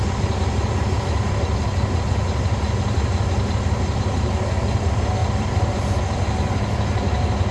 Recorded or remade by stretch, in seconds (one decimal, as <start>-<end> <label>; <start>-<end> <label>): 0.0-5.2 recorded; 5.2-6.0 remade; 6.0-7.5 recorded